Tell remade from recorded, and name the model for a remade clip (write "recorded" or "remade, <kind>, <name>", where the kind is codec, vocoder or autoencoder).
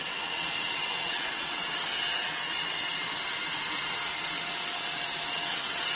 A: remade, vocoder, WaveNeXt